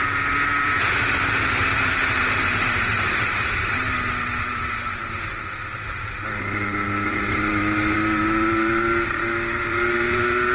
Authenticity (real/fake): fake